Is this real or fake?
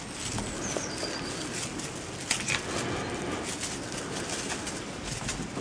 real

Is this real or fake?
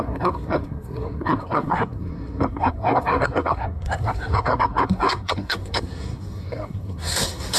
fake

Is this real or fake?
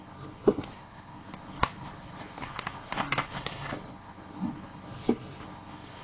fake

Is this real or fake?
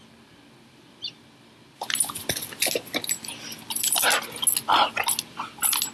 real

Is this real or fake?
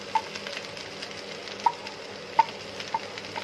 real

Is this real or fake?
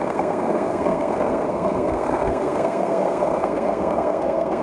fake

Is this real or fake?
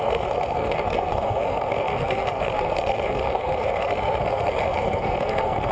fake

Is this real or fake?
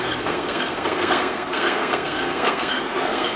fake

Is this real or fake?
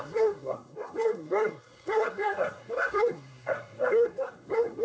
fake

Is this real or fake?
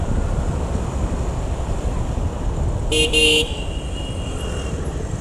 real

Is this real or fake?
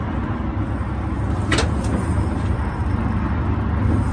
real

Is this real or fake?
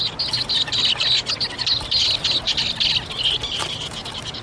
real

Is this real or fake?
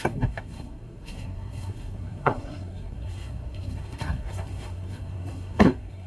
fake